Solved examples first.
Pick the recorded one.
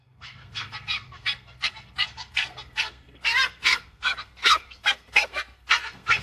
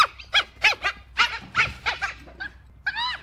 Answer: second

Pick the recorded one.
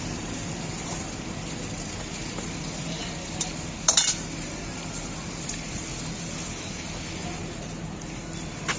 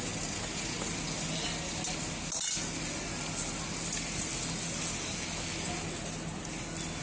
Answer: second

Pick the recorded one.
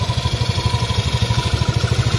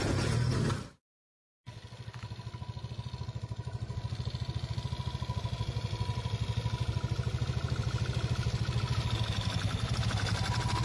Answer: second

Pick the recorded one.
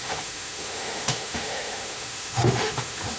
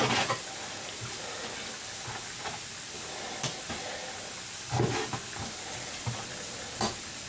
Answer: second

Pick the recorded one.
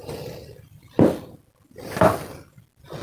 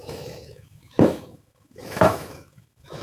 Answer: first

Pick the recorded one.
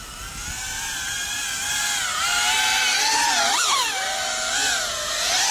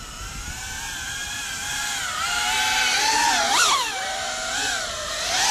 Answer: first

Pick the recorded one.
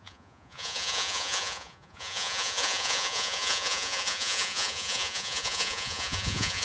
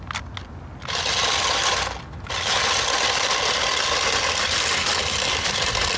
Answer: second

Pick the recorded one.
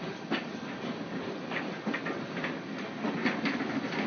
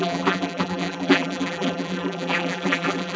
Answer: first